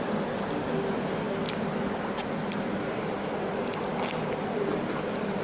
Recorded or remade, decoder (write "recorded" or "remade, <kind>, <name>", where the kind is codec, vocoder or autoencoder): recorded